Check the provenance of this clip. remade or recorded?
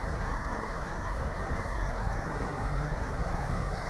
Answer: remade